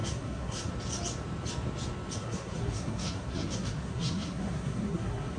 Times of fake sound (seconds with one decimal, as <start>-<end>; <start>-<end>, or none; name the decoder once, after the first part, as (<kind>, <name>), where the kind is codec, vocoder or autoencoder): 0.0-0.7 (codec, SNAC); 2.2-5.4